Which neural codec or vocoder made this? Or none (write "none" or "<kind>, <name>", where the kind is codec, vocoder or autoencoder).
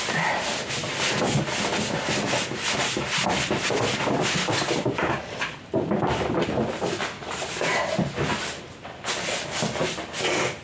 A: none